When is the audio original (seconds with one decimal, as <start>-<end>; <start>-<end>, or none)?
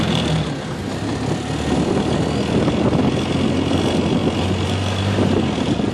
0.0-5.9